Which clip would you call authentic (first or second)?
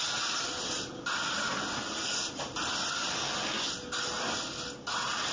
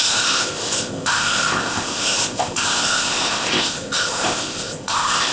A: first